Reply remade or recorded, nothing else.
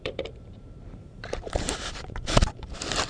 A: remade